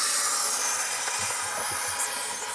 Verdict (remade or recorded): recorded